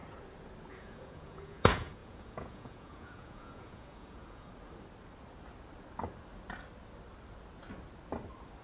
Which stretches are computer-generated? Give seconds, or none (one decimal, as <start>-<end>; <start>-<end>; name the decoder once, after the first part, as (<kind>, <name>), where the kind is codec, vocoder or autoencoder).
0.7-4.5 (vocoder, Vocos)